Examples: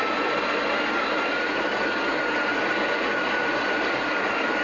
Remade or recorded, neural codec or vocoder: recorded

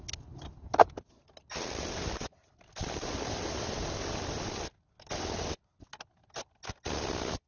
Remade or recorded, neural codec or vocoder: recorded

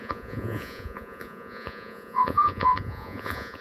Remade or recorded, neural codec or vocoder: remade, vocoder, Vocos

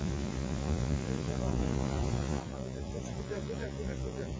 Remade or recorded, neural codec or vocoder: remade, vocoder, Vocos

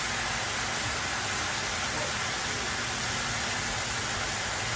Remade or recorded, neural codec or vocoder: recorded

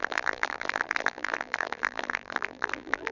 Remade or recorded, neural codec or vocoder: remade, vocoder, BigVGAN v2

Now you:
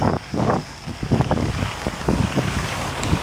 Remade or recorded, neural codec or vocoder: remade, codec, DAC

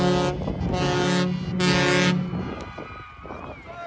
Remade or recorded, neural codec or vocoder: recorded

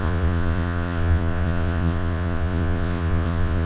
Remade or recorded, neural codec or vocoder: remade, vocoder, Vocos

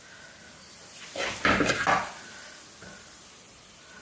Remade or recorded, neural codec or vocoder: recorded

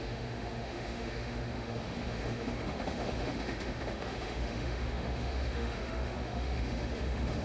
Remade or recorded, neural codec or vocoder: remade, autoencoder, DAC-VAE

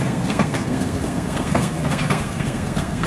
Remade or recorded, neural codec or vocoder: remade, codec, SNAC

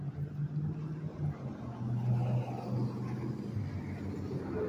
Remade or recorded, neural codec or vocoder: recorded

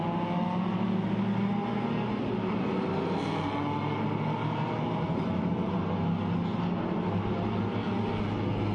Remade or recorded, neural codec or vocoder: recorded